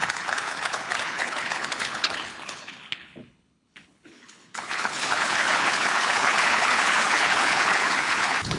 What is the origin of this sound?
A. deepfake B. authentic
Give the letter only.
A